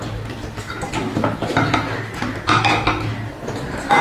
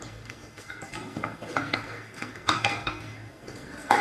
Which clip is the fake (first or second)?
second